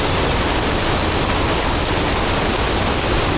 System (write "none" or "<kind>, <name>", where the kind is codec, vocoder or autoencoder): none